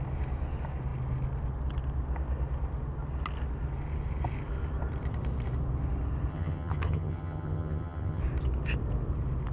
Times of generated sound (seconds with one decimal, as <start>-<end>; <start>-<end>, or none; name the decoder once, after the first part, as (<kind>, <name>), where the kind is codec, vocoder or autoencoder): 6.3-8.2 (vocoder, HiFi-GAN)